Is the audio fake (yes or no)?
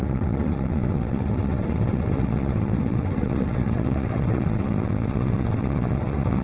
yes